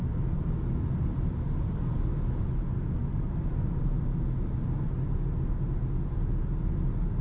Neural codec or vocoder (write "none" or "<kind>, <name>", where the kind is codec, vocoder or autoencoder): none